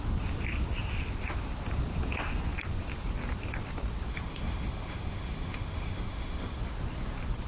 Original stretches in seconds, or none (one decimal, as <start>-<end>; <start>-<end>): 0.0-4.1; 6.6-7.5